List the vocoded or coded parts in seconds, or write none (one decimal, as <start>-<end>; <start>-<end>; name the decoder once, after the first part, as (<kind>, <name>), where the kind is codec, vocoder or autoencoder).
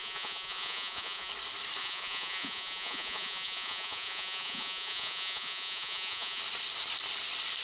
0.0-1.3 (vocoder, Vocos); 1.8-6.4